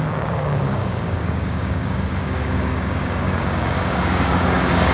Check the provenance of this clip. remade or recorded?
remade